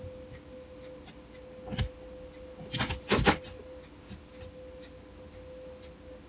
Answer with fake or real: real